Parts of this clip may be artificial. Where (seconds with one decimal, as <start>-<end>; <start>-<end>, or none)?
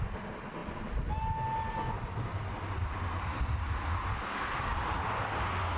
none